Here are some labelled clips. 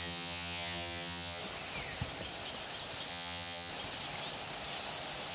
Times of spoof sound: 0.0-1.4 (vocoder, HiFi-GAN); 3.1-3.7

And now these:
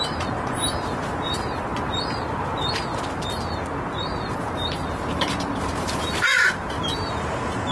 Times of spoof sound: 0.0-1.7 (vocoder, BigVGAN v2); 4.4-7.7

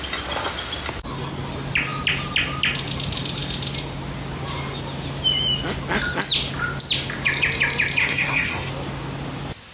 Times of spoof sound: 8.0-8.7 (codec, SNAC)

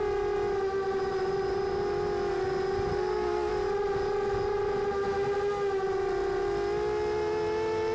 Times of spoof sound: 2.9-3.5 (codec, SNAC)

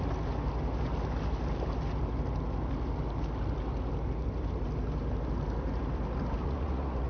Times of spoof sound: 6.4-7.1 (vocoder, Vocos)

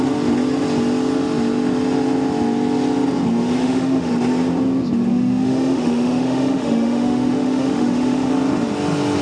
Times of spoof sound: 3.6-4.1 (autoencoder, DAC-VAE); 5.1-8.3

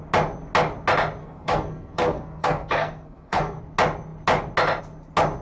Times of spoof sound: 1.2-3.6 (codec, SNAC)